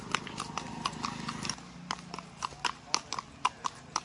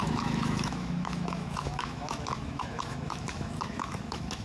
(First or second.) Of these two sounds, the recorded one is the first